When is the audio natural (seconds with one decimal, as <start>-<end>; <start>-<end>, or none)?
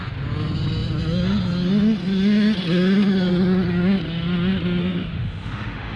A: 0.0-4.8